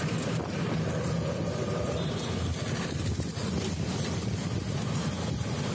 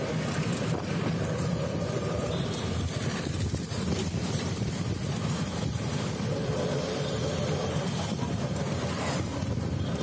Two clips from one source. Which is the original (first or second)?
first